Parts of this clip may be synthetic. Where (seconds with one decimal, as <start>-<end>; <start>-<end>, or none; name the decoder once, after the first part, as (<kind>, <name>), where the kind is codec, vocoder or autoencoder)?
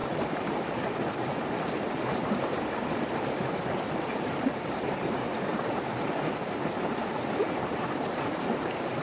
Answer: 0.0-9.0 (vocoder, BigVGAN v2)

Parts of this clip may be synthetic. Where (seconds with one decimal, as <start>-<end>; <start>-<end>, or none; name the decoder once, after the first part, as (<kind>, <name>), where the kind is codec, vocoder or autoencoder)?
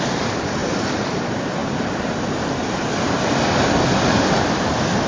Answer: 0.6-1.2 (vocoder, BigVGAN v2)